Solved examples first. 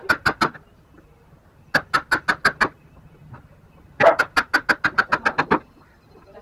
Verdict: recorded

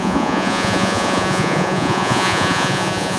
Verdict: remade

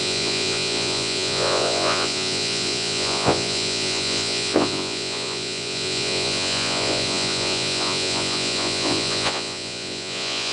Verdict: remade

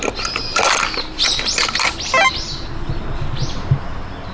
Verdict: recorded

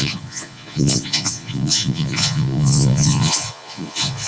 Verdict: remade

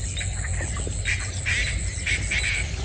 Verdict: recorded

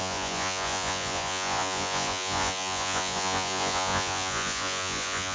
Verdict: remade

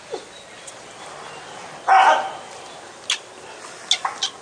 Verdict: recorded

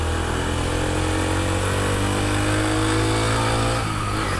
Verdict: recorded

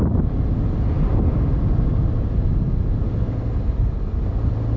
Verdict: recorded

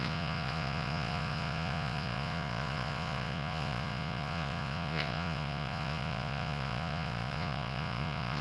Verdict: remade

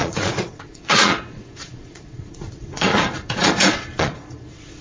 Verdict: remade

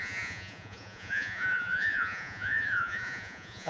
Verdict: remade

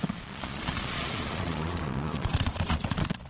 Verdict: remade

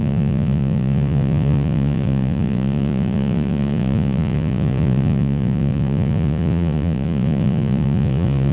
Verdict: remade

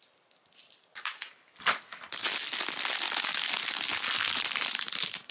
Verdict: recorded